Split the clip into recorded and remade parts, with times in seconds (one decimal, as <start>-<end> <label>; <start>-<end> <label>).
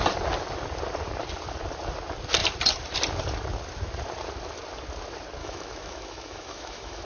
0.0-5.4 recorded; 5.4-7.0 remade